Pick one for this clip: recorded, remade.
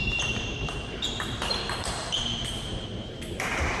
remade